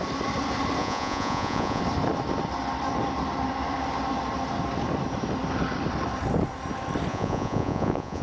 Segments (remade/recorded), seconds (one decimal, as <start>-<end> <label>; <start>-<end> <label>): 0.0-0.8 recorded; 0.8-1.8 remade; 1.8-7.1 recorded; 7.1-8.2 remade